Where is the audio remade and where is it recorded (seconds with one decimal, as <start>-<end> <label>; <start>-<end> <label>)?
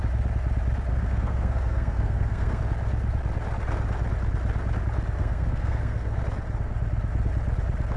0.0-0.9 recorded; 0.9-2.6 remade; 2.6-5.2 recorded; 5.2-6.2 remade; 6.2-8.0 recorded